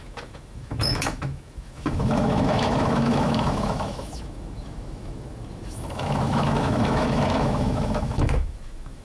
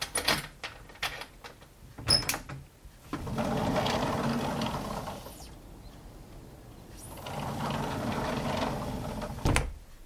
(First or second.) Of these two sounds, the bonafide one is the second